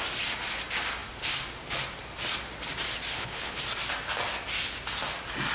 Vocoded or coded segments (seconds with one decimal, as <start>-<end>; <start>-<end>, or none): 3.1-3.6